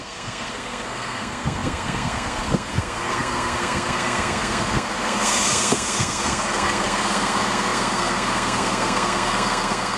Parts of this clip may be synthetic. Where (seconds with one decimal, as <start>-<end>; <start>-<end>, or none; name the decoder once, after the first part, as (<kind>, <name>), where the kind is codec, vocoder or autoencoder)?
0.0-10.0 (codec, SNAC)